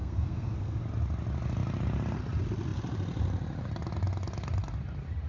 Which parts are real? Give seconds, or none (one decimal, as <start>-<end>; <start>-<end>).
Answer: 0.8-5.3